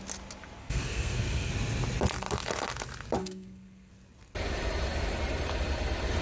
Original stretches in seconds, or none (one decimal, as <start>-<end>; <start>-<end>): 0.0-0.6; 1.5-3.2; 3.9-6.2